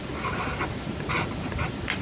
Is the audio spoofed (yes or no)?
no